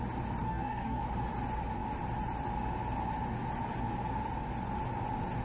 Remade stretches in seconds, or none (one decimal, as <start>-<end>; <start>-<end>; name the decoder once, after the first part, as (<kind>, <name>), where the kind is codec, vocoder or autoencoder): 0.4-1.0 (codec, DAC)